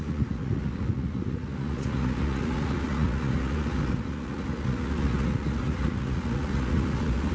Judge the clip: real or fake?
fake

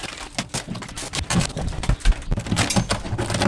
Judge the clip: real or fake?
real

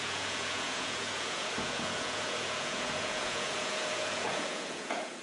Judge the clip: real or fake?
fake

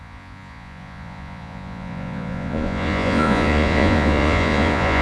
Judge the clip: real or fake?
fake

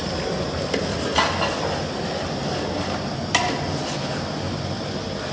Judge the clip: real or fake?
real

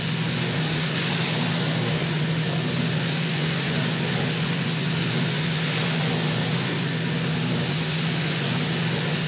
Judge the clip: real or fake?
fake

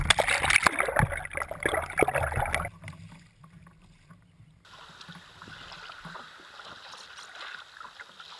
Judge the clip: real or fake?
real